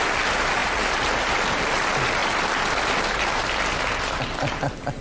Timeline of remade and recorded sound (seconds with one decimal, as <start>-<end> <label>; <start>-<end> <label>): 0.0-5.0 recorded